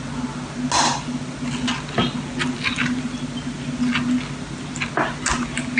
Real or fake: real